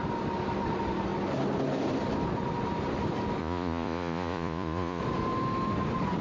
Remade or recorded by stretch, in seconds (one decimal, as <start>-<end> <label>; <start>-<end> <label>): 0.0-3.4 recorded; 3.4-5.0 remade; 5.0-6.2 recorded